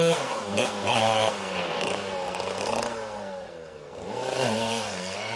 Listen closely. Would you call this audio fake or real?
fake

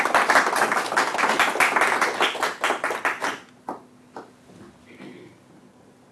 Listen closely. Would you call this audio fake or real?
real